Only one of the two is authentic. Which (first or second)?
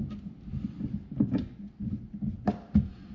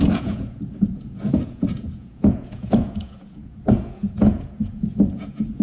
first